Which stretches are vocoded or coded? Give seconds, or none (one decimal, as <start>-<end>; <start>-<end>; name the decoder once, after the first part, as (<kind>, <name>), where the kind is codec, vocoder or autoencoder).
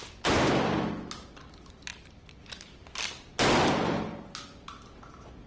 none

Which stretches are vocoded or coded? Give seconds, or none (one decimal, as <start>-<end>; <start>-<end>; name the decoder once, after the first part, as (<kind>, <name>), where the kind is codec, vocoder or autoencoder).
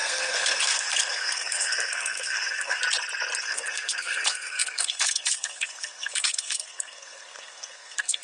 0.0-2.8 (codec, SNAC); 3.4-8.2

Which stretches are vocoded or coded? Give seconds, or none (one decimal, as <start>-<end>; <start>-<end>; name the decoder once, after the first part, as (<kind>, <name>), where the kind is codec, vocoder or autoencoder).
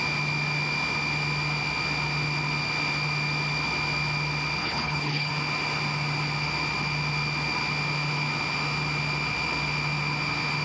4.6-5.3 (codec, HILCodec)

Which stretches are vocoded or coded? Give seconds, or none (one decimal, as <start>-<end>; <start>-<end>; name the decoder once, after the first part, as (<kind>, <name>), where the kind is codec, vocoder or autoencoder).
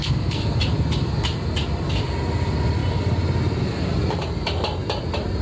0.0-0.6 (codec, SNAC)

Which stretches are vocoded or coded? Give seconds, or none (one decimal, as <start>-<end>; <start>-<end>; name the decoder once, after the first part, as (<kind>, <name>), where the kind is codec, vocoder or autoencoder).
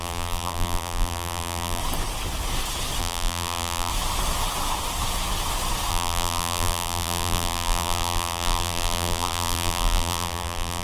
0.0-1.8 (vocoder, BigVGAN v2); 3.0-3.9; 5.9-10.8